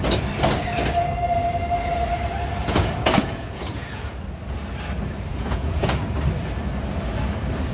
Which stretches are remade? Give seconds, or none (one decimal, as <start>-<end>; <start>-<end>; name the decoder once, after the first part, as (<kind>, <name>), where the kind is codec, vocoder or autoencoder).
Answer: 2.6-4.2 (vocoder, Vocos); 5.3-6.0